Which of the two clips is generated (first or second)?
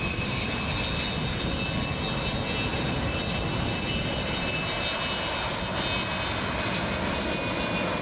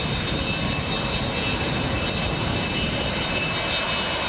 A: second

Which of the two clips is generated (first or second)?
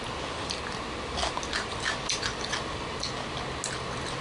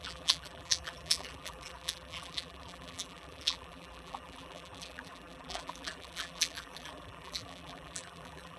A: second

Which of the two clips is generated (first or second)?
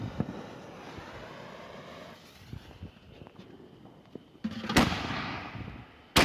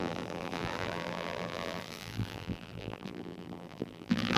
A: second